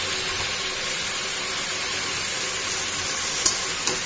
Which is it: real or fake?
real